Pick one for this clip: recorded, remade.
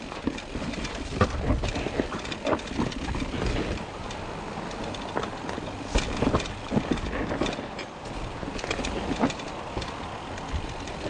recorded